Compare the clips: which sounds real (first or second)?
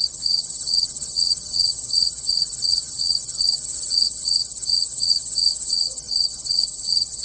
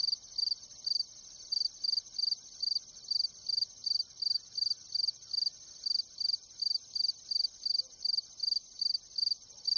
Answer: second